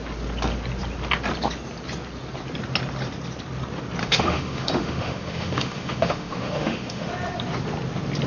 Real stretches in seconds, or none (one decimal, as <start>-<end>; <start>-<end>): 0.0-4.0; 7.1-8.3